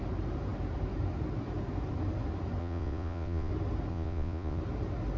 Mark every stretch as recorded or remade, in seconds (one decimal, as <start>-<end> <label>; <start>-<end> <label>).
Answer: 0.0-2.6 recorded; 2.6-3.5 remade; 3.5-3.9 recorded; 3.9-4.6 remade; 4.6-5.2 recorded